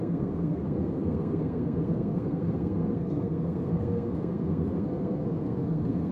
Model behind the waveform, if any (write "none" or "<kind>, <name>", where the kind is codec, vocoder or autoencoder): codec, SNAC